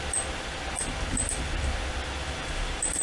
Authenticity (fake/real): real